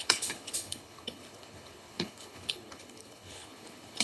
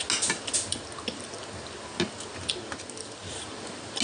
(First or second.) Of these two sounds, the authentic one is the second